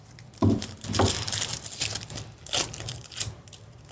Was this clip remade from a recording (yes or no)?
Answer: no